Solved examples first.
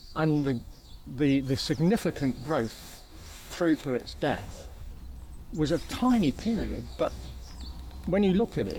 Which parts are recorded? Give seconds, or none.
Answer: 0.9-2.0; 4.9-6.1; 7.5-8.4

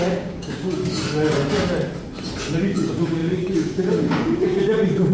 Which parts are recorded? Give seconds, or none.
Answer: 0.8-2.6

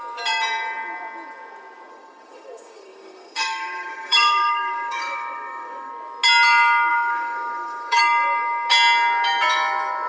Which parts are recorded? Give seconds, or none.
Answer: 0.0-1.9; 5.9-6.9; 8.0-10.1